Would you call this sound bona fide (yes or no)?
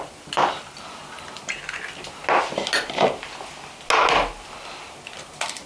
yes